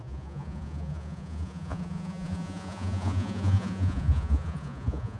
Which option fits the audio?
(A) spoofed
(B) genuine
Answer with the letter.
A